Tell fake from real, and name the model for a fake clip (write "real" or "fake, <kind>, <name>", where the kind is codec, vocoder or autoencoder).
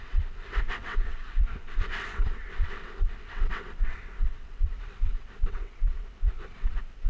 fake, vocoder, WaveNeXt